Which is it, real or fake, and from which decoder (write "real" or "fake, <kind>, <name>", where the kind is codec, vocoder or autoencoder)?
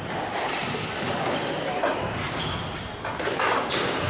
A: real